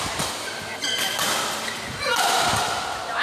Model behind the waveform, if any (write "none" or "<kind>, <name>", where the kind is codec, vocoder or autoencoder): none